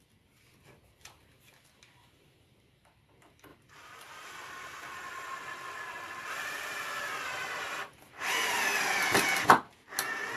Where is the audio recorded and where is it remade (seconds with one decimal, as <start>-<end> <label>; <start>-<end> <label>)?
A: 0.0-3.5 recorded; 3.5-8.7 remade; 8.7-10.4 recorded